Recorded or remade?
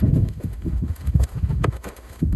remade